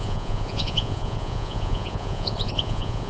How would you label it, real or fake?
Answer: fake